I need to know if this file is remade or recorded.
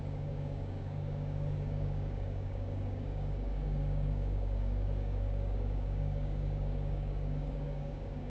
remade